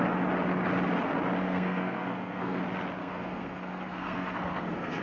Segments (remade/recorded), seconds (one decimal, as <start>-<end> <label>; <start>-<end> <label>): 0.0-1.4 recorded; 1.4-2.6 remade; 2.6-3.0 recorded; 3.0-5.0 remade